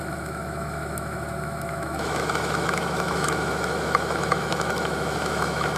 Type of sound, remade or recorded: remade